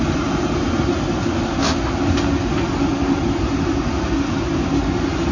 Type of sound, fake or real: real